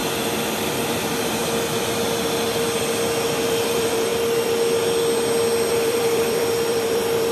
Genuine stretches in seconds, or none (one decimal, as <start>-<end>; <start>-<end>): 1.4-3.4; 4.1-5.7